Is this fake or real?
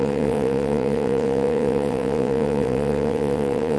fake